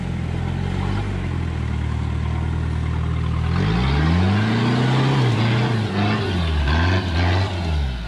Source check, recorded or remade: recorded